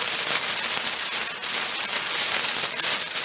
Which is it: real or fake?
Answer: real